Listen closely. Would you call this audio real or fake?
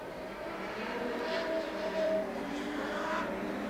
fake